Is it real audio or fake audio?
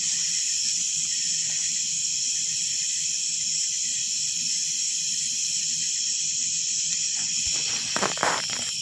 fake